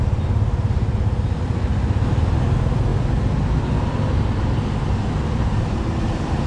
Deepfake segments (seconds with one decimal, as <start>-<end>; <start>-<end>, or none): none